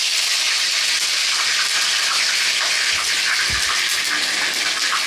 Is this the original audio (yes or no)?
yes